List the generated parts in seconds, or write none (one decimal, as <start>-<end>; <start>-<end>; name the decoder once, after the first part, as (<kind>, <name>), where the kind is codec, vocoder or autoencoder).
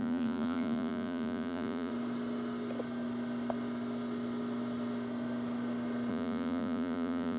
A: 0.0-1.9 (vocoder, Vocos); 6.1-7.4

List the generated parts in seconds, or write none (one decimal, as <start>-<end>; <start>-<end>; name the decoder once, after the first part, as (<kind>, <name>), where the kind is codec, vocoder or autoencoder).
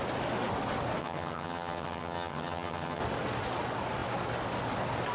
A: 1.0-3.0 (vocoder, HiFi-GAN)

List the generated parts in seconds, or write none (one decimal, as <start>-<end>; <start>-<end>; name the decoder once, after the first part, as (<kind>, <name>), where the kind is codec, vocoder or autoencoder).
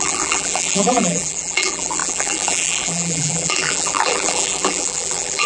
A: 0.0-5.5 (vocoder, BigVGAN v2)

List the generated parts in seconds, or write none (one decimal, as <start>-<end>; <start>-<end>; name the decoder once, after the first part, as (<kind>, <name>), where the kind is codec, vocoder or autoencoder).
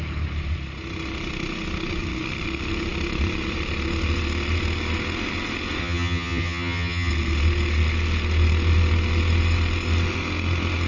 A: 5.8-7.1 (vocoder, HiFi-GAN)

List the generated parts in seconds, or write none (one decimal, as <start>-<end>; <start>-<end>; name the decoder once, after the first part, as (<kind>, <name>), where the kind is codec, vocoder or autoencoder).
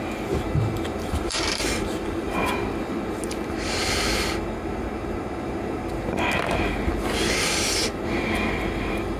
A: 0.9-2.4 (vocoder, BigVGAN v2)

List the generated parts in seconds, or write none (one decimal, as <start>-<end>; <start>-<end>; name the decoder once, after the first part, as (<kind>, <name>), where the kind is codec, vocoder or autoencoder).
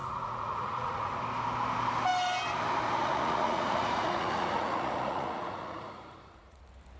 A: 0.0-1.2 (vocoder, Vocos); 3.0-6.6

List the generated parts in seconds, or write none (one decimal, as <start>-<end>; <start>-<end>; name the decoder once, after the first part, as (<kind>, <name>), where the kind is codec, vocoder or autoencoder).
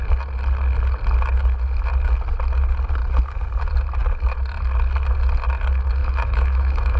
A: 6.0-7.0 (autoencoder, DAC-VAE)